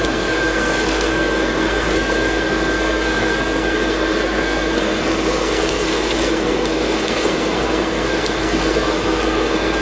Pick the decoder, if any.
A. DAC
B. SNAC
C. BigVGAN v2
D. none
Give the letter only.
B